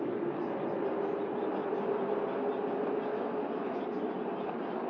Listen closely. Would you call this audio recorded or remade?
recorded